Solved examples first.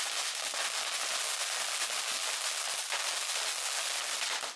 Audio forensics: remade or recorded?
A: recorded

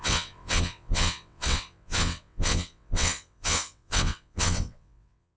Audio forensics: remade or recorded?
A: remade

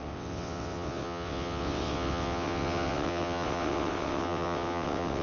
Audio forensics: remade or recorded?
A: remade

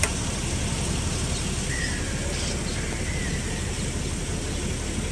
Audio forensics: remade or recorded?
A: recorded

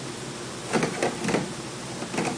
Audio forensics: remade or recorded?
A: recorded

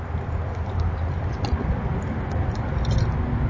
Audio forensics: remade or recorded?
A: recorded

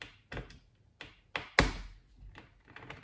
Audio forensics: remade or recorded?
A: recorded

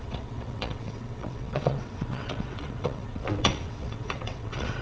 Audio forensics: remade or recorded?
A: remade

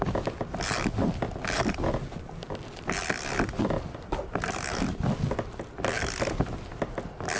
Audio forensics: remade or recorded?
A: recorded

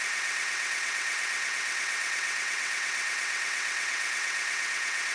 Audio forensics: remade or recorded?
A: remade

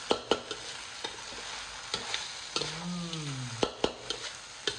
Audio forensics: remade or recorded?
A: recorded